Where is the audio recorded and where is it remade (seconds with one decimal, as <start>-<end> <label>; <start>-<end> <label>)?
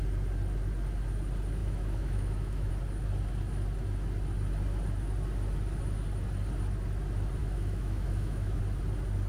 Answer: 0.0-1.6 recorded; 1.6-2.7 remade; 2.7-7.4 recorded; 7.4-8.6 remade; 8.6-9.3 recorded